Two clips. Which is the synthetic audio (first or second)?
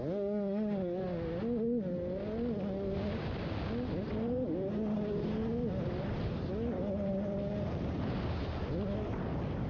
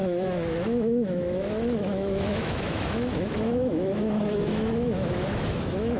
second